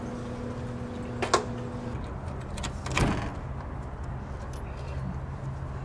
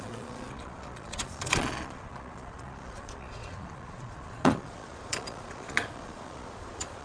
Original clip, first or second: first